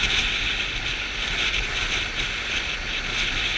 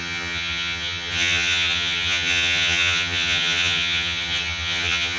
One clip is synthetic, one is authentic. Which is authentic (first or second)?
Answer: first